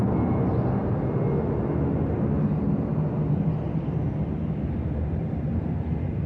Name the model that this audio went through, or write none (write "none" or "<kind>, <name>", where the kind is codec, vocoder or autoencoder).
none